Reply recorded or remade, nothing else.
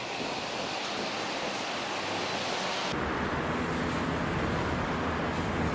recorded